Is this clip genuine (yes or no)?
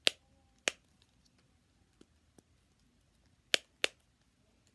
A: yes